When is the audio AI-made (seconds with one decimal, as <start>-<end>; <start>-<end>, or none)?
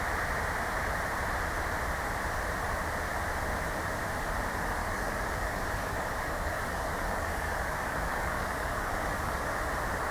4.8-9.6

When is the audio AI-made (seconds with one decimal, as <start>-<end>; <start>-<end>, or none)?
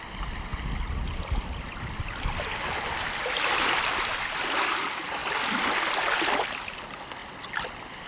none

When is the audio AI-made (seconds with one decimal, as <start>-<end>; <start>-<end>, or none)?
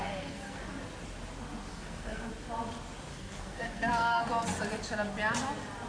0.0-0.6; 1.7-2.3; 3.1-4.2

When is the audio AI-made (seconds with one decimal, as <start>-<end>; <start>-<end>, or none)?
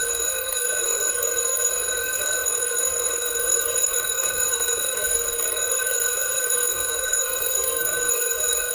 0.0-8.7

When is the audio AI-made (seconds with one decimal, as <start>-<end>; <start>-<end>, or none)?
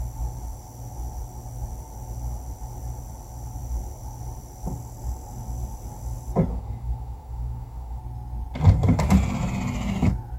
6.5-8.0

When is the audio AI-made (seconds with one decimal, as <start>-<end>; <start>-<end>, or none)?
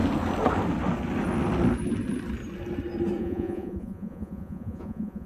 3.2-5.3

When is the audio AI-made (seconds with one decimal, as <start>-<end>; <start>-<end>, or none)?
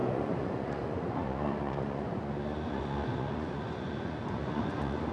0.0-5.1